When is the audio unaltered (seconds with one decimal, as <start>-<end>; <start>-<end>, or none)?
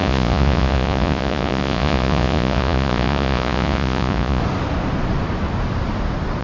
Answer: 4.4-6.4